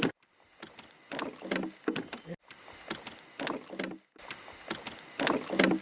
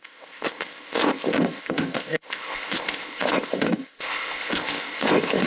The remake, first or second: second